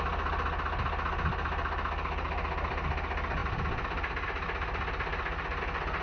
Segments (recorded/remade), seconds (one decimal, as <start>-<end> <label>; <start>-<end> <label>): 0.0-6.0 recorded